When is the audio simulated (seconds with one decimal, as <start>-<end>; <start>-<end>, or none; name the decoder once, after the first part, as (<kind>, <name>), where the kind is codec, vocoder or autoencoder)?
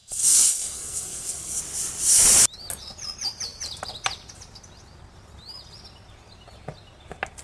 0.0-1.6 (codec, SNAC)